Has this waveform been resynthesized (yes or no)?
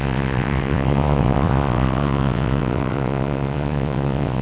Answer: yes